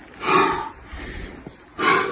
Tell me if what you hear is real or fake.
real